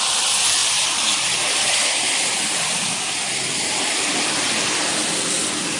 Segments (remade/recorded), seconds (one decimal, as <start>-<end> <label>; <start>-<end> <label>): 0.0-5.8 remade